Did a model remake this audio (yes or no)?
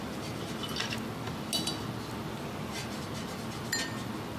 no